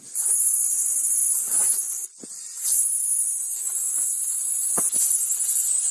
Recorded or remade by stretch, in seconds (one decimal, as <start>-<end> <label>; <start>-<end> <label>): 0.0-5.9 recorded